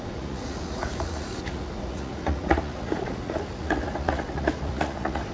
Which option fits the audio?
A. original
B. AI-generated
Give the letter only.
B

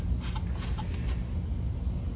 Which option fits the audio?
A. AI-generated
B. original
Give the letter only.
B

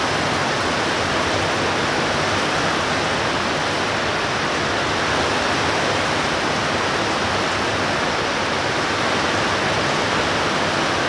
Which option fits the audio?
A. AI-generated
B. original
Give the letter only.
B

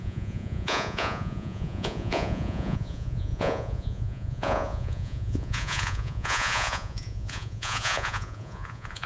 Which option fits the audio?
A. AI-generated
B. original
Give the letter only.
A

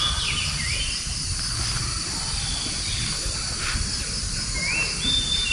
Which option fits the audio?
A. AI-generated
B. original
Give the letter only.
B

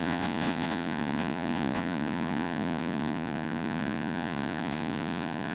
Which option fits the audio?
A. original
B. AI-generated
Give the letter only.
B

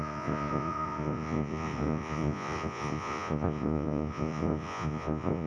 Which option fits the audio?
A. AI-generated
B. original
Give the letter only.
A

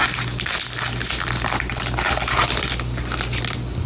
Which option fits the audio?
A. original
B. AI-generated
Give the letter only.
A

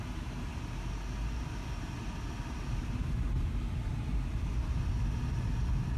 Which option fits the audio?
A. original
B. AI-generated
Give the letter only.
A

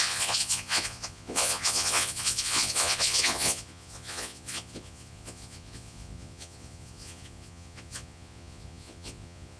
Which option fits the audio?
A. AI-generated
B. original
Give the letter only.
A